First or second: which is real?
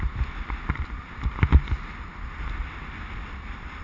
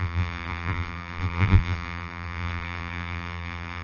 first